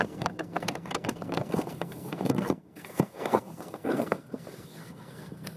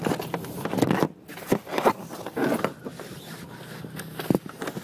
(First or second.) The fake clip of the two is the first